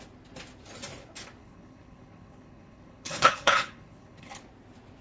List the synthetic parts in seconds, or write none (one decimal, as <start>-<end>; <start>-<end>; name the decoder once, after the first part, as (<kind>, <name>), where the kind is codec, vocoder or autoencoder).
1.4-4.4 (codec, HILCodec)